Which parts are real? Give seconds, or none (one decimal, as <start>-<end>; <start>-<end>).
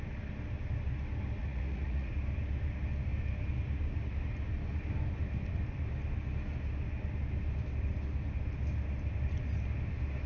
0.0-1.4; 2.1-10.3